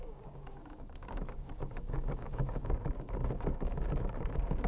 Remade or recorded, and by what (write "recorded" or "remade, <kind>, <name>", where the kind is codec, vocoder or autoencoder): remade, codec, DAC